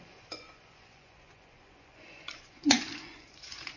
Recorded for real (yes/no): no